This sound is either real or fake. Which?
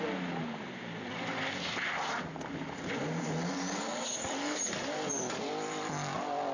real